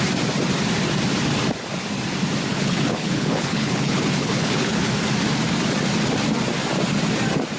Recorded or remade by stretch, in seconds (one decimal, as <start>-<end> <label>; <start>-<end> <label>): 0.0-2.5 recorded; 2.5-4.9 remade; 4.9-7.6 recorded

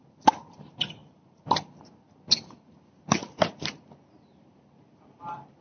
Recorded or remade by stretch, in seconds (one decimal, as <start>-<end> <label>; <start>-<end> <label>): 0.0-5.6 recorded

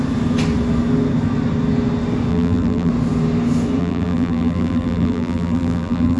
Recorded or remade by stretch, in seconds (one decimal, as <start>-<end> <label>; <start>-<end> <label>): 0.0-2.3 recorded; 2.3-2.9 remade; 2.9-3.8 recorded; 3.8-6.2 remade

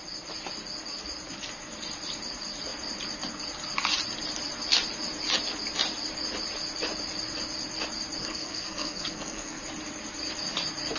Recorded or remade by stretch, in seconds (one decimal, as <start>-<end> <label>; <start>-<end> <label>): 0.0-8.2 recorded; 8.2-9.6 remade; 9.6-11.0 recorded

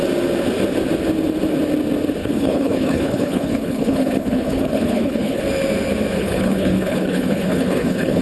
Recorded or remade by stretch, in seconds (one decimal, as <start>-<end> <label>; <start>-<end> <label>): 0.0-2.2 recorded; 2.2-5.4 remade; 5.4-6.2 recorded; 6.2-8.2 remade

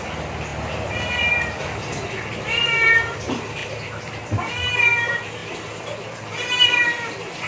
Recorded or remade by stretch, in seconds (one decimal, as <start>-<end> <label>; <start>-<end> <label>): 0.0-7.5 recorded

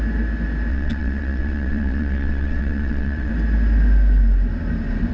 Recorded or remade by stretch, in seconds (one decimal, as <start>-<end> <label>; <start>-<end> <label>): 0.0-0.7 recorded; 0.7-3.3 remade; 3.3-5.1 recorded